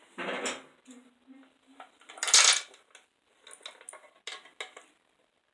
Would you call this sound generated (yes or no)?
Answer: no